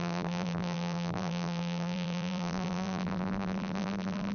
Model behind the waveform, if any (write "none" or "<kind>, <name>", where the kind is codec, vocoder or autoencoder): vocoder, BigVGAN v2